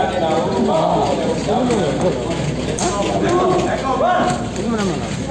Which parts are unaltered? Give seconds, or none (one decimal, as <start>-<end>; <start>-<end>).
0.0-5.3